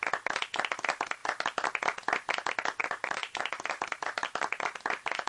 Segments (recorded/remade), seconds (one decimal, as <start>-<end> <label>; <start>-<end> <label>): 0.0-2.8 recorded; 2.8-5.3 remade

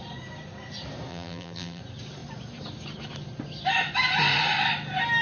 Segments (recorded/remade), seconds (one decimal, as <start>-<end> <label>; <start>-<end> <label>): 0.0-1.1 recorded; 1.1-1.8 remade; 1.8-5.2 recorded

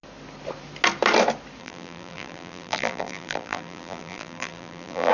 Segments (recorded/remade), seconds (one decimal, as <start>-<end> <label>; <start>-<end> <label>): 0.0-1.6 recorded; 1.6-5.1 remade

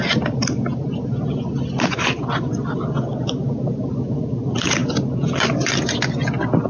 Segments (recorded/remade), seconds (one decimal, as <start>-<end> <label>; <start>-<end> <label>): 0.0-6.7 recorded

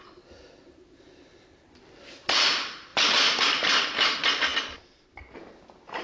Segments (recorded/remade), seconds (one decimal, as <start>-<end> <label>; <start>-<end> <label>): 0.0-2.9 recorded; 2.9-3.8 remade; 3.8-6.0 recorded

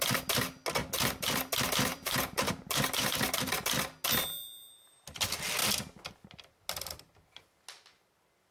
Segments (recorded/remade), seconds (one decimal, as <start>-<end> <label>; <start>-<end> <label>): 0.0-1.9 recorded; 1.9-3.1 remade; 3.1-8.5 recorded

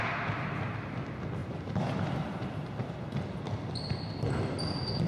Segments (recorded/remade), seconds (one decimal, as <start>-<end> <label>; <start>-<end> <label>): 0.0-1.4 recorded; 1.4-4.5 remade; 4.5-5.1 recorded

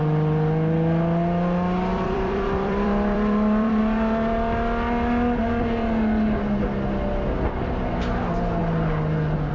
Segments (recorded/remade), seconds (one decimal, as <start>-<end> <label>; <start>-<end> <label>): 0.0-1.9 recorded; 1.9-3.8 remade; 3.8-9.5 recorded